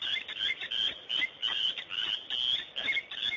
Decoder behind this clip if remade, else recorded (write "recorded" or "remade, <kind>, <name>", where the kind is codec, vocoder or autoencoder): recorded